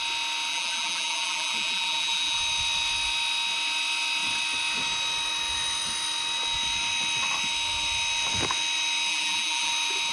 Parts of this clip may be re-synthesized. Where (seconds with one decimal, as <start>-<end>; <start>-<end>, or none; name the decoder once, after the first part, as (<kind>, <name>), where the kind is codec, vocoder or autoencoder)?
0.5-2.4 (vocoder, BigVGAN v2); 9.1-9.7